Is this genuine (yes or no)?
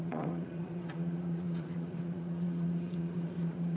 no